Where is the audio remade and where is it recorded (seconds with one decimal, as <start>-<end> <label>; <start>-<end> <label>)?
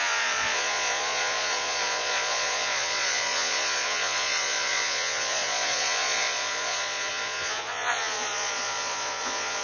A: 0.0-9.6 remade